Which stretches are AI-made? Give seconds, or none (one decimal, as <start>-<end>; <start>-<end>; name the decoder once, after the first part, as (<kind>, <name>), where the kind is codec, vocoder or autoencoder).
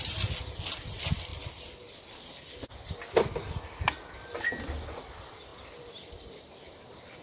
none